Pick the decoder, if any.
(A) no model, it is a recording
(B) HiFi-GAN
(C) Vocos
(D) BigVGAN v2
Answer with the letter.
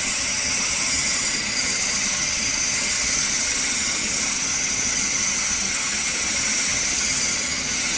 B